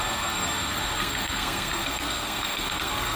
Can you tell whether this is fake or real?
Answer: fake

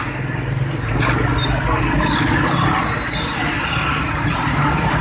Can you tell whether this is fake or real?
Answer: real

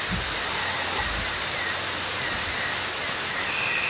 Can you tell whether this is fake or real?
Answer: real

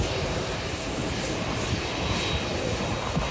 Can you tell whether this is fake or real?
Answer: real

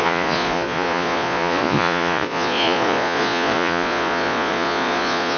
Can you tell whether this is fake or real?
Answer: fake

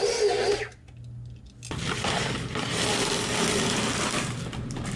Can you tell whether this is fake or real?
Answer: real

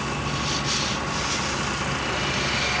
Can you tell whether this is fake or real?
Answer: real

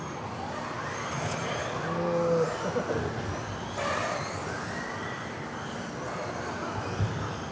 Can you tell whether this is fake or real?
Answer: real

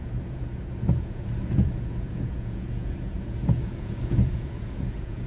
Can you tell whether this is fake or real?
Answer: fake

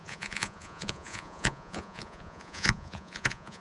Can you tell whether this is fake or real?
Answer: fake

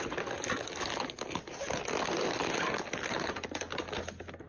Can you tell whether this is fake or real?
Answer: real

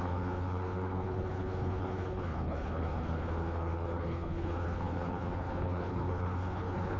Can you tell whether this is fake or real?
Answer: fake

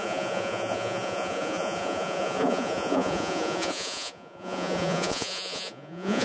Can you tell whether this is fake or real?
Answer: fake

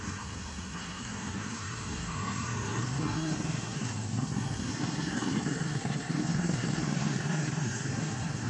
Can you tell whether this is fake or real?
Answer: fake